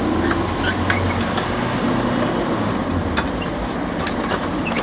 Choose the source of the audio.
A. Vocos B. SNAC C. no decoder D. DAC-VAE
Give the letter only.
C